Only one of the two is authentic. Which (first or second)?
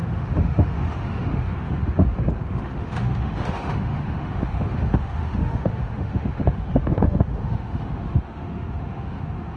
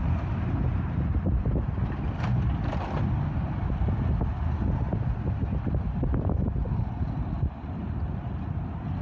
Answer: second